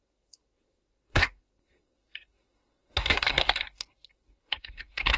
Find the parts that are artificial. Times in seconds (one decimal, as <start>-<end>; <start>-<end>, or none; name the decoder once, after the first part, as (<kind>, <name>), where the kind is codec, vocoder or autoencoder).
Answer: 0.0-5.2 (codec, SNAC)